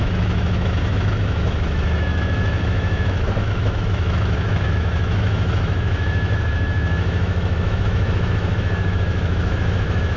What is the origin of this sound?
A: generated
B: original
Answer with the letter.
A